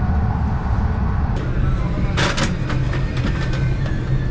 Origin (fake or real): real